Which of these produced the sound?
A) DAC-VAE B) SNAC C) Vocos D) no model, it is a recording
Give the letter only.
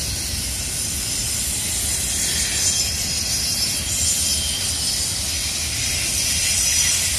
D